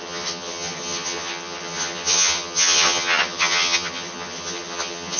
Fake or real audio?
fake